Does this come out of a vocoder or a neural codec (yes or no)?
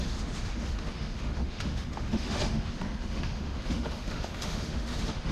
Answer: yes